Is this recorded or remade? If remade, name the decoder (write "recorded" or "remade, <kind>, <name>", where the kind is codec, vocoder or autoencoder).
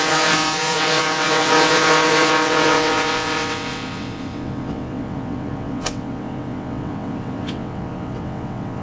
remade, vocoder, WaveNeXt